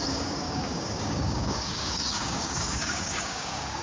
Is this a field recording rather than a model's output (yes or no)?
no